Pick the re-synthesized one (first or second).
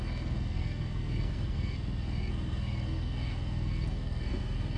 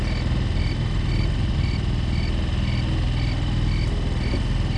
first